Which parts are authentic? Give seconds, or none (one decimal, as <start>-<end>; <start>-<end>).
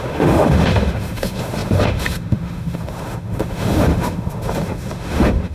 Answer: none